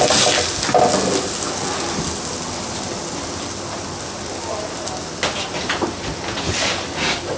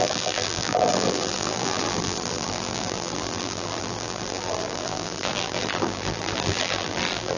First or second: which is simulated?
second